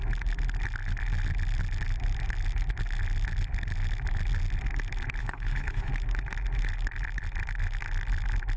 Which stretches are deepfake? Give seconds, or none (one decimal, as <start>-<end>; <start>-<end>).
5.2-5.9